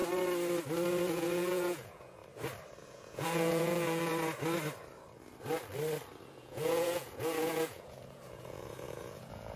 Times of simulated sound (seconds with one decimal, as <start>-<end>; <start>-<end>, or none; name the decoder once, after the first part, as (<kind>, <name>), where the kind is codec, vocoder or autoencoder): 1.1-2.2 (vocoder, Vocos); 2.8-4.1; 6.3-9.6